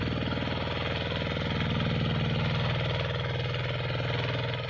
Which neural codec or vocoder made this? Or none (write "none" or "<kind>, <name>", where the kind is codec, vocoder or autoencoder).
none